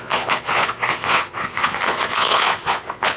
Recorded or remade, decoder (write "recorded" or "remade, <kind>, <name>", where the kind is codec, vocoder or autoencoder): remade, vocoder, Vocos